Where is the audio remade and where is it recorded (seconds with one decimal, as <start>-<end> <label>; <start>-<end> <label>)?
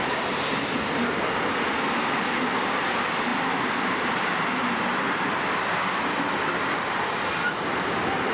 0.0-8.3 recorded